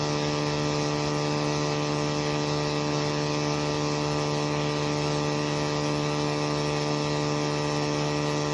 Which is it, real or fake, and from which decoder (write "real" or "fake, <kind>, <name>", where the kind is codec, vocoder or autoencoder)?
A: real